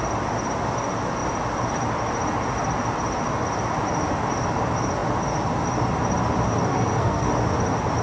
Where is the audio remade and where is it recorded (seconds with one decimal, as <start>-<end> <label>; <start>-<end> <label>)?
0.0-6.7 recorded; 6.7-7.3 remade; 7.3-8.0 recorded